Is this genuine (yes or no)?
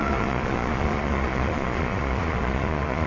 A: no